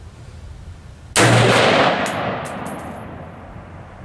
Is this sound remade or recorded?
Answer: recorded